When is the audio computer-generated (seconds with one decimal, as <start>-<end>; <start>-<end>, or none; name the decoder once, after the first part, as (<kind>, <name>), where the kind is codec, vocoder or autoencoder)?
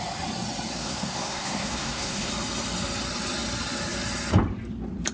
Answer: 0.7-2.3 (codec, SNAC)